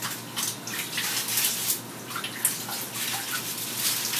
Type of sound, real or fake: real